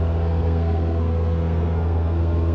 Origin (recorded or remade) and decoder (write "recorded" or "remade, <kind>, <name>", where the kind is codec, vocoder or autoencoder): remade, codec, SNAC